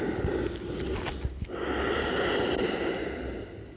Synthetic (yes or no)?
no